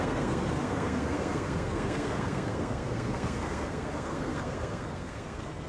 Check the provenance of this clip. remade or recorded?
remade